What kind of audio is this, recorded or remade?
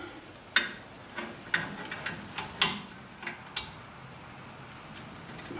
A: recorded